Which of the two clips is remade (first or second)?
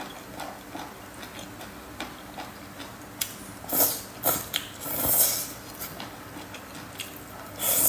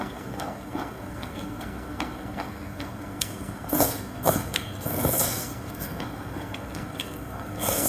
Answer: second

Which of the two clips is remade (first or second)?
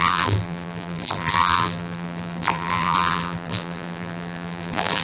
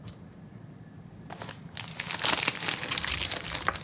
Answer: first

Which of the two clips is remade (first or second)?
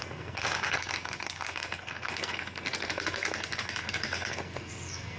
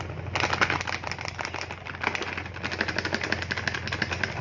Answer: first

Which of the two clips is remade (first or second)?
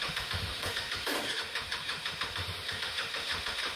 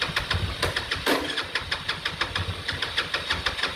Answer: first